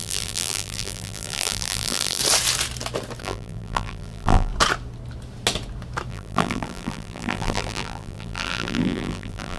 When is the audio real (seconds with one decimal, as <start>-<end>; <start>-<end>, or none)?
2.2-3.2; 4.5-6.1